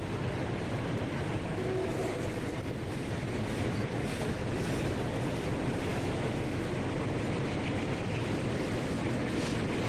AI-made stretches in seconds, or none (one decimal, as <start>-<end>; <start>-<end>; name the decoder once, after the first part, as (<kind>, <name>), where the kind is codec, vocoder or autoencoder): 5.9-6.9 (autoencoder, DAC-VAE)